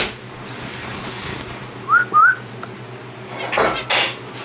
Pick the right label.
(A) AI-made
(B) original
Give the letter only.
B